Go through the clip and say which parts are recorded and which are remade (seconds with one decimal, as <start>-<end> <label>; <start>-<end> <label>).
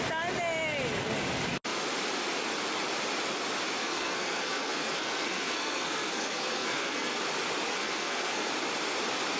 0.0-3.8 recorded; 3.8-7.2 remade; 7.2-7.7 recorded; 7.7-8.5 remade; 8.5-9.4 recorded